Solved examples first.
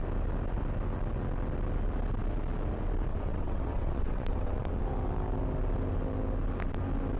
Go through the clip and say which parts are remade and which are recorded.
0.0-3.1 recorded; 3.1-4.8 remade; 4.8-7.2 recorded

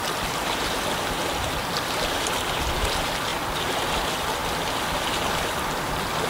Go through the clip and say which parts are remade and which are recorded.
0.0-6.3 recorded

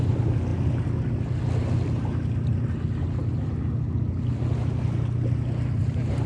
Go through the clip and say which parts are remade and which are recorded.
0.0-6.3 recorded

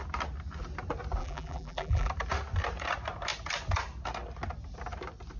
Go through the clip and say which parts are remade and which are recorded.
0.0-1.2 recorded; 1.2-2.1 remade; 2.1-5.4 recorded

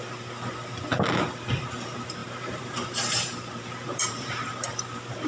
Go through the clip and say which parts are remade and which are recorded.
0.0-2.2 recorded; 2.2-5.3 remade

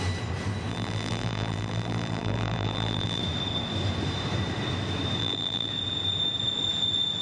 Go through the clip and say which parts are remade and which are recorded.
0.0-0.7 recorded; 0.7-3.2 remade; 3.2-5.2 recorded; 5.2-5.7 remade; 5.7-7.2 recorded

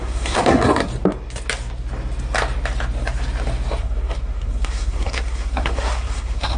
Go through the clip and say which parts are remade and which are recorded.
0.0-0.9 remade; 0.9-3.8 recorded; 3.8-6.6 remade